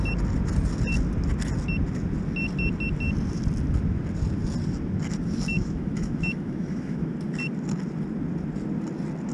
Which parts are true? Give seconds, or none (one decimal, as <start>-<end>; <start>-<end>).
0.0-5.5; 7.1-9.3